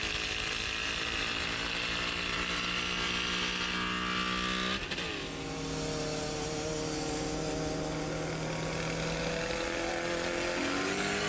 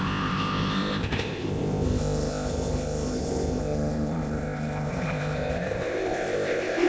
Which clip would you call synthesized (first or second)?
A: second